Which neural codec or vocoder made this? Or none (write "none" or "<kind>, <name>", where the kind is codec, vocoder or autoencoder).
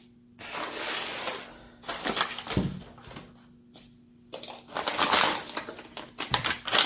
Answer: none